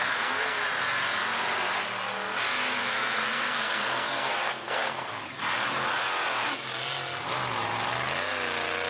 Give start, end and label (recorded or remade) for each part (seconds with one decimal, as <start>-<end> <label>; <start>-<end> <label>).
0.0-0.6 remade; 0.6-2.8 recorded; 2.8-5.1 remade; 5.1-8.9 recorded